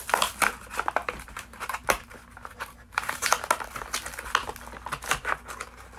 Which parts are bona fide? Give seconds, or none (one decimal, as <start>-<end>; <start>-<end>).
0.0-1.0; 3.5-6.0